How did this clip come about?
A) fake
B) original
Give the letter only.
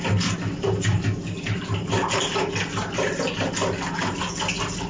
B